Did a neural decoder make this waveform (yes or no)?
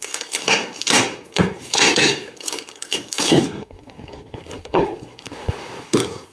yes